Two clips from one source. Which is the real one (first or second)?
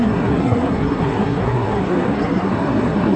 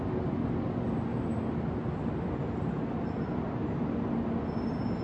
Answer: second